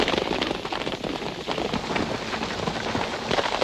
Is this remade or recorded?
recorded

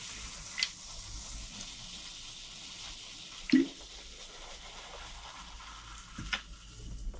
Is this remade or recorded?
recorded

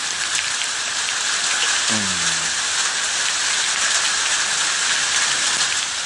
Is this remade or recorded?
recorded